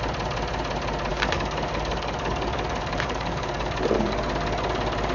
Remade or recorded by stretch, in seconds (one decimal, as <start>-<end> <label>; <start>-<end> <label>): 0.0-1.1 recorded; 1.1-4.2 remade; 4.2-5.1 recorded